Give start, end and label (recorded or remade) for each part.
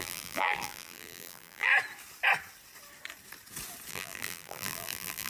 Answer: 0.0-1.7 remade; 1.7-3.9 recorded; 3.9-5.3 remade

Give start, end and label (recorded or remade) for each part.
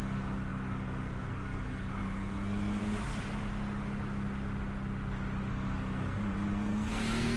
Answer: 0.0-2.8 remade; 2.8-5.5 recorded; 5.5-7.4 remade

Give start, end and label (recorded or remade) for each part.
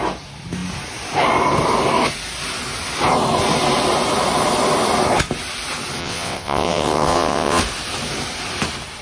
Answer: 0.0-6.0 recorded; 6.0-7.6 remade; 7.6-9.0 recorded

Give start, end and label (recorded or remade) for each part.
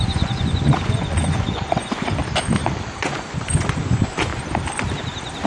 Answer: 0.0-2.2 remade; 2.2-3.0 recorded; 3.0-4.3 remade; 4.3-5.5 recorded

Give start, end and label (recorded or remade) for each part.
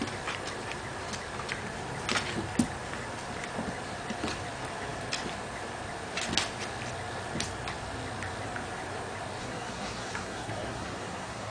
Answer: 0.0-9.4 recorded; 9.4-11.5 remade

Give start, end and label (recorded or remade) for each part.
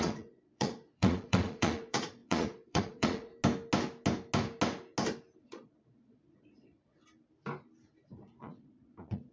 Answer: 0.0-3.3 remade; 3.3-5.4 recorded; 5.4-7.0 remade; 7.0-8.4 recorded; 8.4-9.3 remade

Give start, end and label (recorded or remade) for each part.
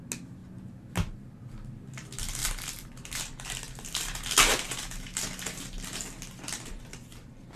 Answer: 0.0-2.4 recorded; 2.4-3.5 remade; 3.5-7.6 recorded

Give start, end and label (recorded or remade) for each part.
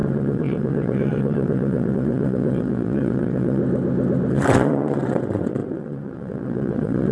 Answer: 0.0-3.6 remade; 3.6-4.3 recorded; 4.3-7.1 remade